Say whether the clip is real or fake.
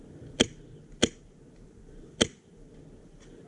real